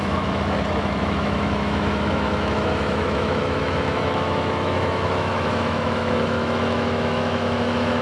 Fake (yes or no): yes